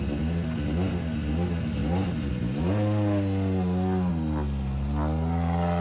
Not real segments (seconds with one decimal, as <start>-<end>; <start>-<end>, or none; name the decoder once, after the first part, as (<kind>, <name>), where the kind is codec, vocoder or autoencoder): none